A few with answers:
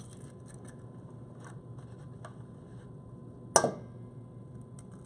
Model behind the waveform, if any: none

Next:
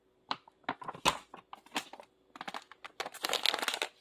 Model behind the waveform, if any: none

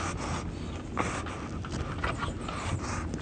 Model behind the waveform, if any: none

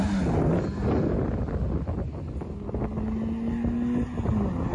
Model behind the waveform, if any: none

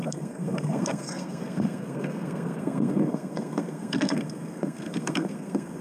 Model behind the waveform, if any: codec, SNAC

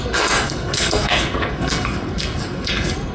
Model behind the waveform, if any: codec, SNAC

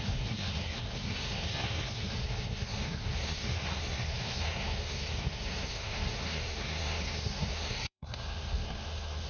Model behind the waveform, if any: codec, SNAC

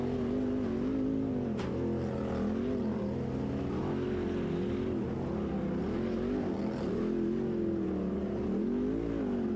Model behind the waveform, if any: none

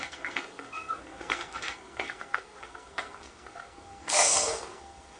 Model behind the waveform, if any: codec, SNAC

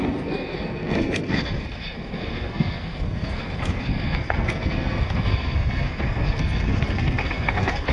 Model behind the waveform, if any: codec, SNAC